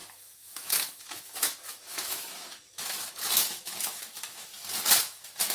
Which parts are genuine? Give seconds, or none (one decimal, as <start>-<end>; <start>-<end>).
4.5-5.0

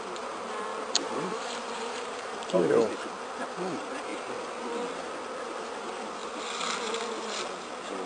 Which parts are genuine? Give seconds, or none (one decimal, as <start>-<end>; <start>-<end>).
0.0-0.7; 3.0-8.1